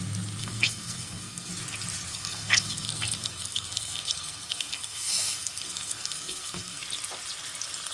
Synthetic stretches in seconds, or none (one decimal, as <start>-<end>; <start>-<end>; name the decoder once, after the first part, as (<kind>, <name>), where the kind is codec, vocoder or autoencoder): 0.4-1.5 (codec, SNAC); 2.1-6.8